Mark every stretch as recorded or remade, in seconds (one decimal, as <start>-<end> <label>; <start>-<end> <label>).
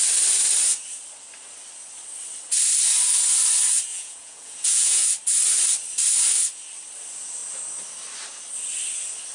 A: 0.0-3.9 recorded; 3.9-5.1 remade; 5.1-9.3 recorded